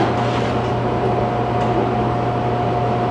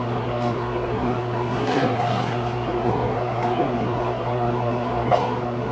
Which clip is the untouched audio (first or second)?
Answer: first